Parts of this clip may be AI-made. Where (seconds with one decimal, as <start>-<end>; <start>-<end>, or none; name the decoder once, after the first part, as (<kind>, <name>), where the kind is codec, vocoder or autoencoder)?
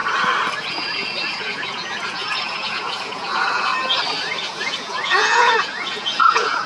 0.7-3.7 (vocoder, Vocos); 4.4-6.7